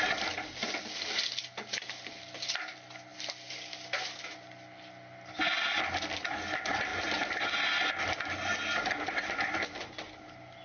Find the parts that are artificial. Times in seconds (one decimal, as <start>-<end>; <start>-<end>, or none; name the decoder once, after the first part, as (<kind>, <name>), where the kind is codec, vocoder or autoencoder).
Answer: none